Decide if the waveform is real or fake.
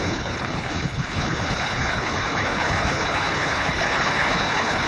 fake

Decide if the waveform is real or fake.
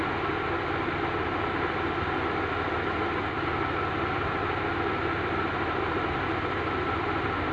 real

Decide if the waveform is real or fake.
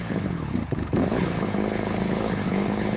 fake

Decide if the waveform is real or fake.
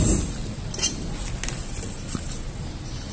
real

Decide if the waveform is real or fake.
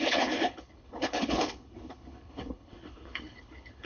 fake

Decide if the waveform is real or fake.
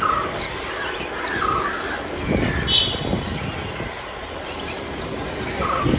real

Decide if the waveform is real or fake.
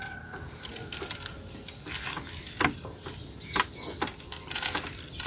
real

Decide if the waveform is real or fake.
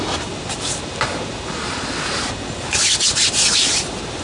real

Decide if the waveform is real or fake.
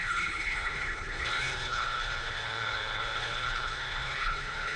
fake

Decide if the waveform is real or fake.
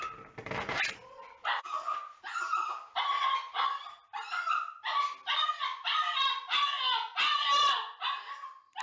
real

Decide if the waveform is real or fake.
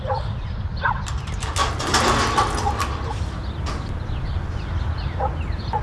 real